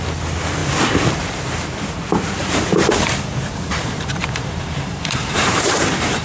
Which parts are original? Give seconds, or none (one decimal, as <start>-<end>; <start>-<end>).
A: 0.0-2.4